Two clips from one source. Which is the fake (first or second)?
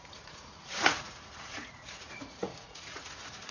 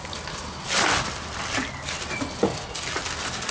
first